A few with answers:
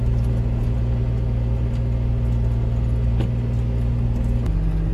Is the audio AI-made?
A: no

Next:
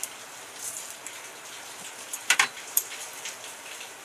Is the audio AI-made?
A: yes